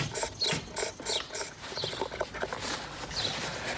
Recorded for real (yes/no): yes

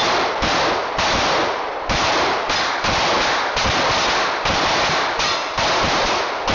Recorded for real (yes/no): yes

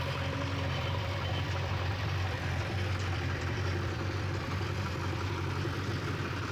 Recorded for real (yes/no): no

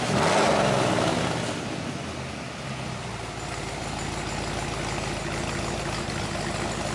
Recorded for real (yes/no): yes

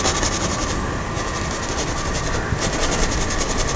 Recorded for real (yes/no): yes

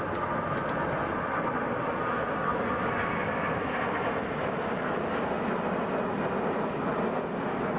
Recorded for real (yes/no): yes